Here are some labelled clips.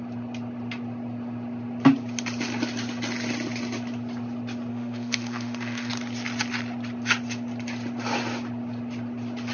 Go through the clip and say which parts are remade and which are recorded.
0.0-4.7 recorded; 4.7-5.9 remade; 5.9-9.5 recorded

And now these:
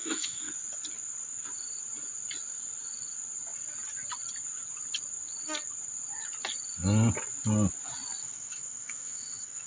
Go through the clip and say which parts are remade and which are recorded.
0.0-0.5 remade; 0.5-8.2 recorded; 8.2-9.7 remade

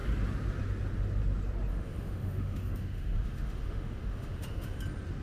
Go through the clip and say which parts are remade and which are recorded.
0.0-1.7 recorded; 1.7-4.8 remade; 4.8-5.2 recorded

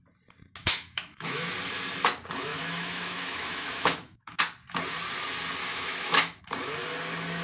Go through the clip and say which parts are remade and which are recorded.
0.0-0.6 recorded; 0.6-1.5 remade; 1.5-2.5 recorded; 2.5-4.4 remade; 4.4-5.6 recorded; 5.6-6.4 remade; 6.4-7.4 recorded